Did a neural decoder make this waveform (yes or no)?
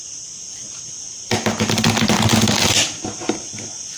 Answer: no